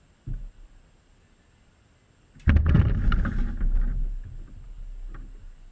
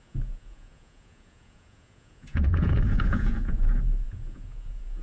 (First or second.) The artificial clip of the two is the second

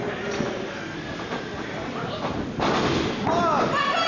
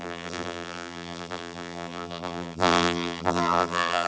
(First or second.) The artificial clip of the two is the second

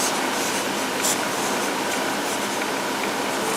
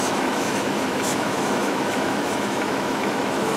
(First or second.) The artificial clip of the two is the second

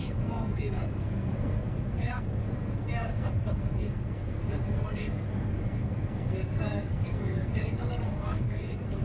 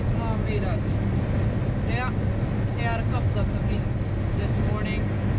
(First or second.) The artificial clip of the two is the first